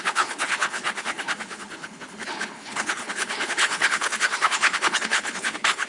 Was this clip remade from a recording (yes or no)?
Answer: yes